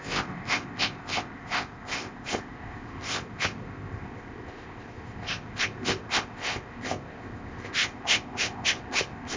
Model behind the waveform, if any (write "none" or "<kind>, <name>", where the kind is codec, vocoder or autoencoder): codec, ZipCodec